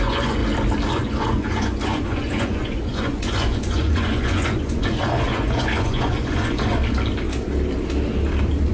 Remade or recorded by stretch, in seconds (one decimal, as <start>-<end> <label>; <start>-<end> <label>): 0.0-0.4 remade; 0.4-0.9 recorded; 0.9-6.8 remade; 6.8-8.7 recorded